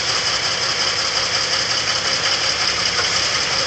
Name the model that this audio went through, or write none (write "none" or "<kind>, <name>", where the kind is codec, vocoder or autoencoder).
none